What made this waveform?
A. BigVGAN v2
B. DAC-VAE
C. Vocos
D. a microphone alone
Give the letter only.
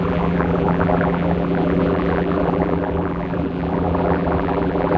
A